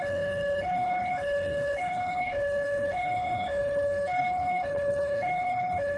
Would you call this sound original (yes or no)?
no